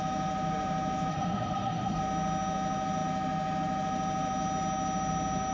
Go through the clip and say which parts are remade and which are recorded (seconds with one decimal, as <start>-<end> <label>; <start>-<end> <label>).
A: 0.0-1.1 recorded; 1.1-2.0 remade; 2.0-5.5 recorded